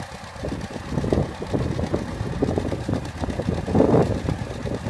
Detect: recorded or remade recorded